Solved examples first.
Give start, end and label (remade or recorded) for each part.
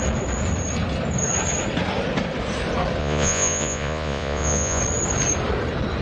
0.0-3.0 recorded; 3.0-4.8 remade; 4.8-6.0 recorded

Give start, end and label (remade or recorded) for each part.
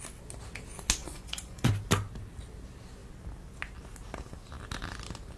0.0-1.0 recorded; 1.0-1.7 remade; 1.7-5.4 recorded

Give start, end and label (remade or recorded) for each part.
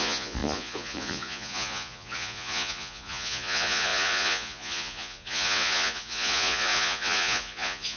0.0-8.0 remade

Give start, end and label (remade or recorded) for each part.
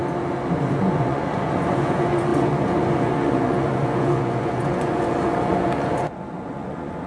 0.0-0.7 recorded; 0.7-7.1 remade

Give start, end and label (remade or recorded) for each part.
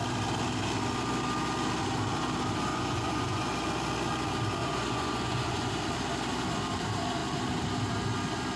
0.0-2.7 recorded; 2.7-3.5 remade; 3.5-4.6 recorded; 4.6-5.7 remade; 5.7-8.6 recorded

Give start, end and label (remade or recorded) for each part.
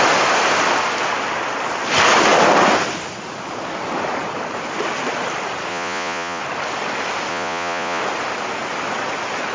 0.0-5.7 recorded; 5.7-6.4 remade; 6.4-7.3 recorded; 7.3-8.0 remade; 8.0-9.5 recorded